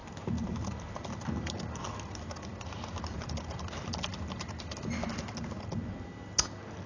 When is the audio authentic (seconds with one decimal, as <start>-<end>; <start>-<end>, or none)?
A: 0.0-6.9